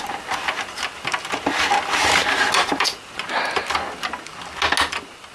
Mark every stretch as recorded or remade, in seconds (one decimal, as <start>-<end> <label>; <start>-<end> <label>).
0.0-5.3 recorded